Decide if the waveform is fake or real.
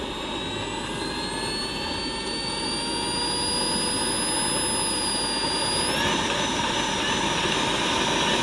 real